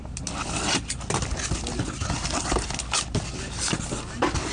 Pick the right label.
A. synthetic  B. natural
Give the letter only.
B